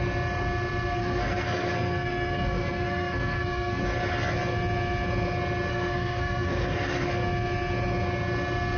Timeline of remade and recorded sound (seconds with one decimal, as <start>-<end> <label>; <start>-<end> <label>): 0.0-1.0 recorded; 1.0-3.8 remade; 3.8-5.7 recorded; 5.7-7.1 remade; 7.1-8.8 recorded